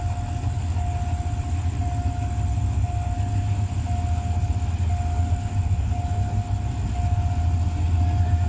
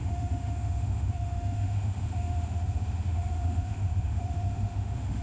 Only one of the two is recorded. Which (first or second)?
first